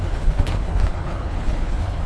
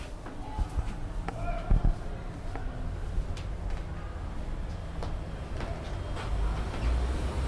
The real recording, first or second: second